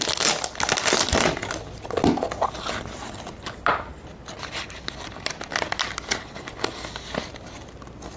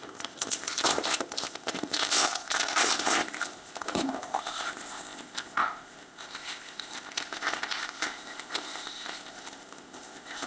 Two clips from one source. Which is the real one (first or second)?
first